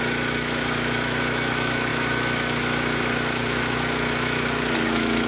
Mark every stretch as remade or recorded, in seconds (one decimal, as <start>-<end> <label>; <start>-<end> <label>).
0.0-5.3 remade